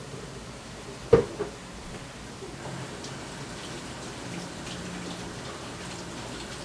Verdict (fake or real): real